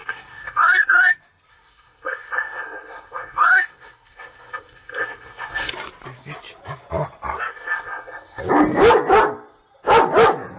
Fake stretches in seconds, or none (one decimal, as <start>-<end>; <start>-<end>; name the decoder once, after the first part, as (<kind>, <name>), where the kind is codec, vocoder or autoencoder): 0.0-1.1 (codec, SNAC); 1.5-5.7; 7.5-8.4